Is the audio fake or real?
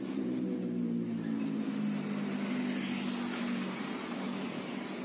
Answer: real